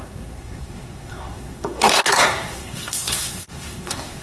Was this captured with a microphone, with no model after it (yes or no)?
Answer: no